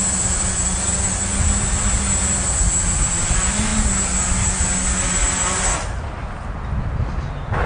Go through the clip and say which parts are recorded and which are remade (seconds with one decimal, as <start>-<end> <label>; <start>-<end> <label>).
0.0-7.7 recorded